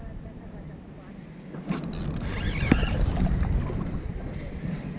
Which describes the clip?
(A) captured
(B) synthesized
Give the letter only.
A